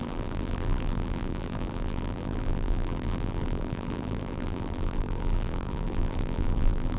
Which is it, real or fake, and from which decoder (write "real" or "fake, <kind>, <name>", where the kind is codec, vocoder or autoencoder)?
fake, vocoder, BigVGAN v2